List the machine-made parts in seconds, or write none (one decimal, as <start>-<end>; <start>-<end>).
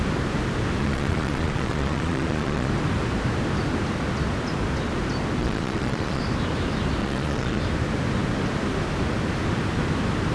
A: 0.8-2.7; 5.4-6.2; 7.0-7.6